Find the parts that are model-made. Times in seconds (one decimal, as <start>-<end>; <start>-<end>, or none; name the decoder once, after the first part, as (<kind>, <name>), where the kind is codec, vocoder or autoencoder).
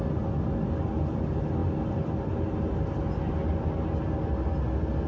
none